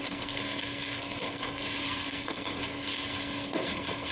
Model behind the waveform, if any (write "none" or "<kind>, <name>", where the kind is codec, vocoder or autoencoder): codec, SNAC